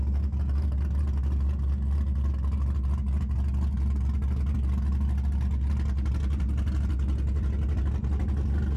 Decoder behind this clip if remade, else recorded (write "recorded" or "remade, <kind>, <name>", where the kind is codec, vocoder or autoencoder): recorded